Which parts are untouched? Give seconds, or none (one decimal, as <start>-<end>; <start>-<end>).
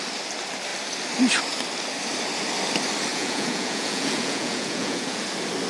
0.0-3.1; 5.2-5.7